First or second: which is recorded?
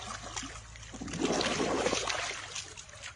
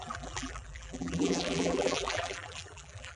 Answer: first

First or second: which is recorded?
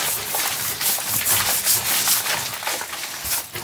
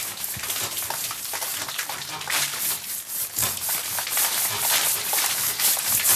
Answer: first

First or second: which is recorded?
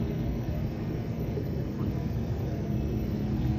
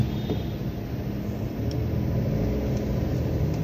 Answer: second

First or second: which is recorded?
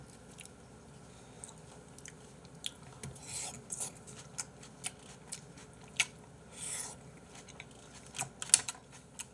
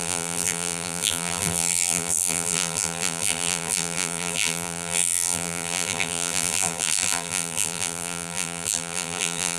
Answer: first